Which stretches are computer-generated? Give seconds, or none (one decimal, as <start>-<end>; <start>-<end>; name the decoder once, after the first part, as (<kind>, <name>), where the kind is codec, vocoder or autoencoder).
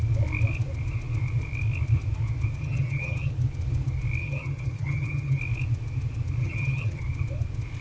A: 2.6-3.3 (vocoder, HiFi-GAN); 4.2-5.4; 6.4-7.0